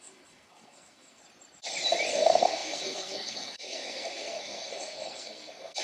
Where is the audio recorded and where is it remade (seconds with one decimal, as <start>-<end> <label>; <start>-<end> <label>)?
0.0-1.2 remade; 1.2-2.1 recorded; 2.1-5.8 remade